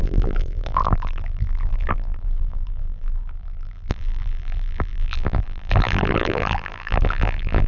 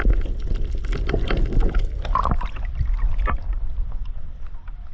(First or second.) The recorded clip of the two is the second